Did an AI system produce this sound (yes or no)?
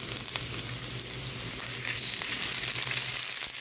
no